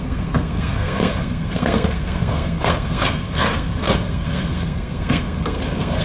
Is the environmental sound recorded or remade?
remade